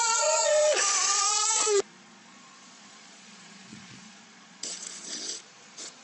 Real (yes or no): no